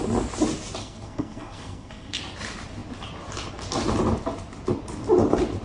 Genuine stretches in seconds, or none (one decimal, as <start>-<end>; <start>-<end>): 0.0-0.8; 2.2-5.6